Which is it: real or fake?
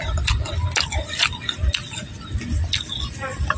real